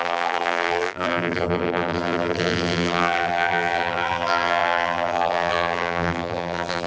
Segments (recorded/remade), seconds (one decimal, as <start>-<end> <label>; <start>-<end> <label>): 0.0-6.9 remade